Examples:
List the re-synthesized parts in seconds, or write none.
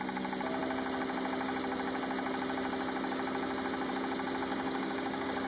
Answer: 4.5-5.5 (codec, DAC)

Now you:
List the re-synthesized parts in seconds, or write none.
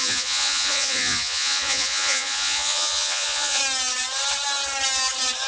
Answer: 0.0-3.6 (vocoder, Vocos)